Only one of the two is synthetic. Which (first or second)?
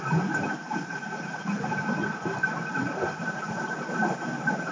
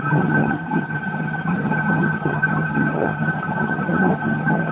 second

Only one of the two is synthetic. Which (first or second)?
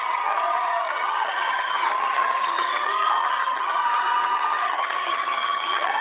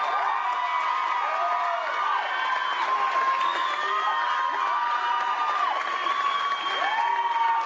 first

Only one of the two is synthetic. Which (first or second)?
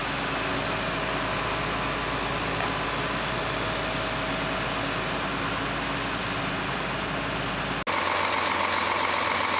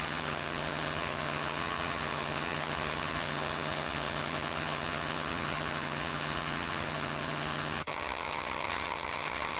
second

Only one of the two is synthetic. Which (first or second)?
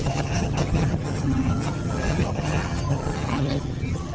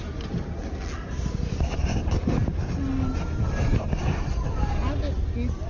first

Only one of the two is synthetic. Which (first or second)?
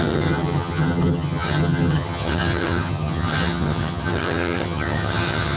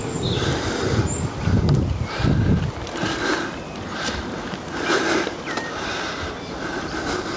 first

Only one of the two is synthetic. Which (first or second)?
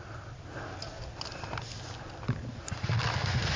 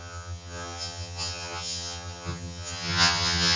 second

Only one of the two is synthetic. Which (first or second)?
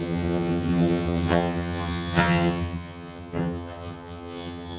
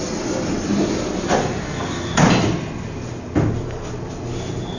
first